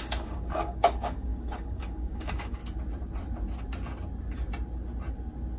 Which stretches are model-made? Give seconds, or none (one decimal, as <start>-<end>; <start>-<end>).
0.0-2.6

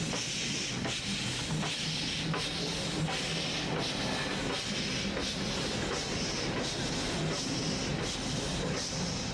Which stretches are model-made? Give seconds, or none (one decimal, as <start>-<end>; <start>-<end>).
none

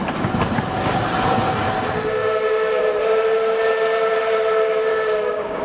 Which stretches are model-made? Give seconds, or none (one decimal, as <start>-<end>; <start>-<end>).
2.2-2.8; 4.9-5.6

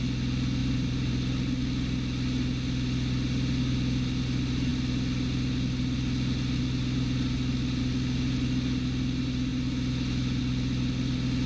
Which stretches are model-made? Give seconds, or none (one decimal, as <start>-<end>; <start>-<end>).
0.6-1.1

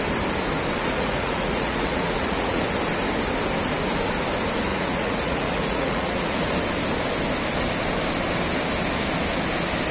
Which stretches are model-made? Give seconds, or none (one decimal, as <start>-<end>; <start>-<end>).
0.8-2.6; 4.7-6.5

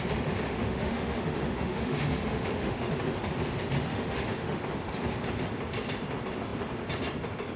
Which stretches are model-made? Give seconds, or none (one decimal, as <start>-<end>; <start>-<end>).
0.5-2.9; 3.9-4.6

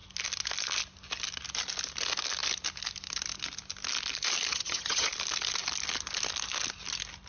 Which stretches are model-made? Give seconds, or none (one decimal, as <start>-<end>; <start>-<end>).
4.5-5.1

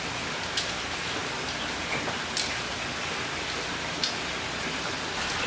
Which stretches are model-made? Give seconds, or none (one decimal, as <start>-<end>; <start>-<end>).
none